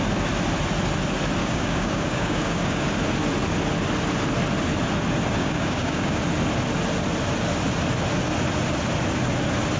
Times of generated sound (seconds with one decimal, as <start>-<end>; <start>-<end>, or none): 1.4-2.9; 5.4-6.2